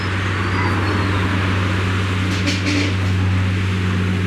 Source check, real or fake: real